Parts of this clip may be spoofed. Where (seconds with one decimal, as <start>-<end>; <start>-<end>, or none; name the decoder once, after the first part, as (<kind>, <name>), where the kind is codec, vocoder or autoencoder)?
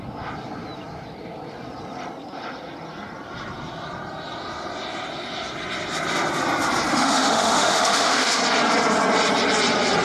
6.9-8.4 (autoencoder, DAC-VAE)